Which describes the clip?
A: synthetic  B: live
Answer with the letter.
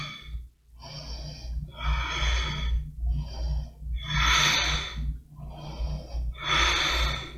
B